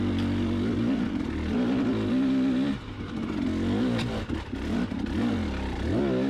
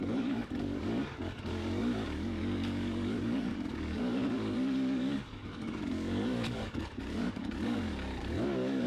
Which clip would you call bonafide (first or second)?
first